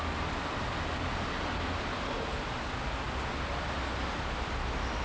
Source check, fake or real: real